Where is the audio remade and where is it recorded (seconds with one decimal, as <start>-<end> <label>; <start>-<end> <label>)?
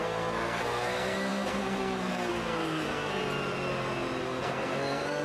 0.0-3.2 remade; 3.2-4.2 recorded; 4.2-5.2 remade